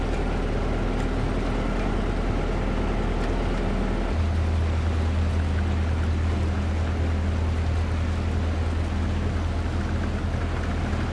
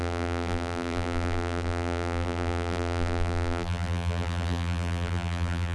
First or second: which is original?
first